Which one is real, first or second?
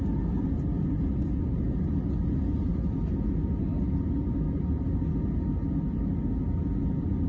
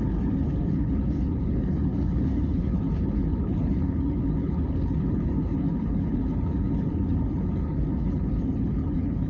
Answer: first